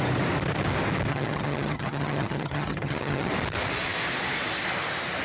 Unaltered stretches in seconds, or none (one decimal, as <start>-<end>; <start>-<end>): 0.0-1.1; 3.3-5.2